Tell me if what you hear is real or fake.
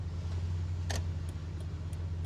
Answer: real